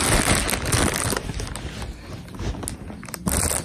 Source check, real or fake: real